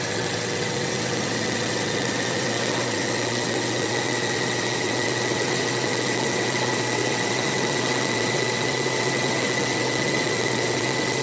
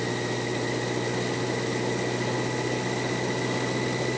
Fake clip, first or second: first